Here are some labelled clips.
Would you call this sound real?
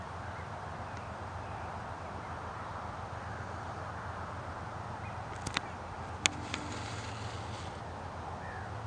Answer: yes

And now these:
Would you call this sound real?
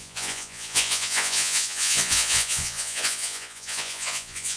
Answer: no